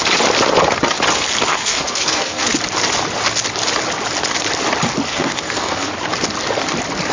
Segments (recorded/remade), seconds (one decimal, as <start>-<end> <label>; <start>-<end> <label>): 0.0-1.5 recorded; 1.5-2.5 remade; 2.5-5.1 recorded; 5.1-5.9 remade; 5.9-7.1 recorded